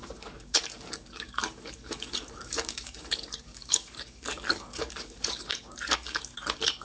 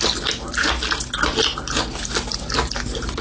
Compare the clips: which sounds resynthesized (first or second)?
first